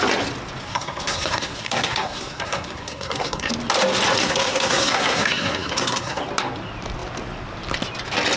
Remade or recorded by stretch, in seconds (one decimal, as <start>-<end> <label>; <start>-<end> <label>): 0.0-0.6 recorded; 0.6-3.5 remade; 3.5-4.2 recorded; 4.2-6.2 remade; 6.2-8.4 recorded